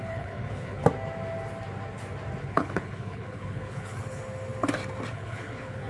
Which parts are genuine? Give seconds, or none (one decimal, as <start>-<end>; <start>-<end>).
0.8-2.4; 4.2-5.1